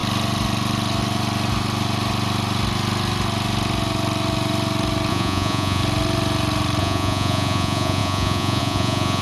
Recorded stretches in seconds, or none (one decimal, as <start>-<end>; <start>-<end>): 0.0-5.1; 5.8-6.8